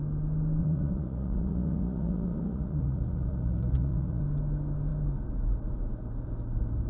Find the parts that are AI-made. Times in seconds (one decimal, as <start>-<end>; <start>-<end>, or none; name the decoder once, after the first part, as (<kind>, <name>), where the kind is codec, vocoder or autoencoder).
0.6-4.2 (vocoder, Vocos)